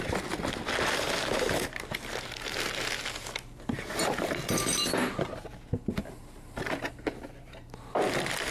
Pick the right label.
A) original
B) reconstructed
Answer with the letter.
A